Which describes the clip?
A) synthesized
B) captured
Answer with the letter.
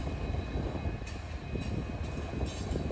B